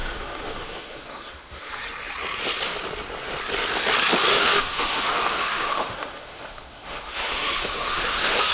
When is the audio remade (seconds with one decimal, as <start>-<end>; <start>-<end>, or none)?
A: 0.0-1.7; 4.3-8.5